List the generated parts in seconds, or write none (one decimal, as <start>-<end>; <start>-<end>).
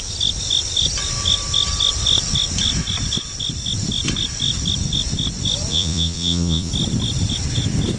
5.7-6.7